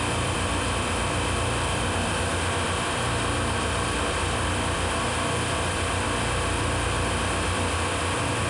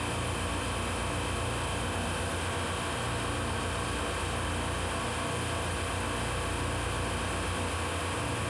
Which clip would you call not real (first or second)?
first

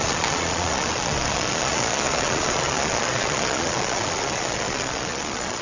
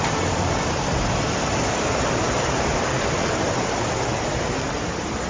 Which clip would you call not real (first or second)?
first